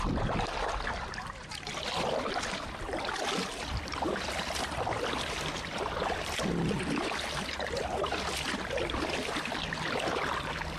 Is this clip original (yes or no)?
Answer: yes